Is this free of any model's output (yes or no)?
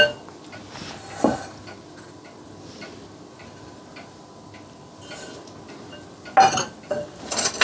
yes